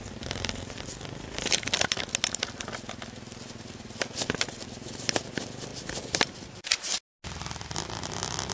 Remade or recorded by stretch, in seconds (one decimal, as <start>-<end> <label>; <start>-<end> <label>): 0.0-8.5 recorded